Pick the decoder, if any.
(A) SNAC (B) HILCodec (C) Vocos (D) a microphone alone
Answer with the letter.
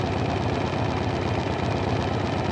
D